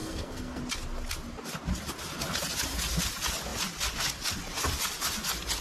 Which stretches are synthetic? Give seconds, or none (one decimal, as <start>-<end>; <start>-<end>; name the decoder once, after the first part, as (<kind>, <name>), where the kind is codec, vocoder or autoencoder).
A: 0.0-0.6 (codec, SNAC)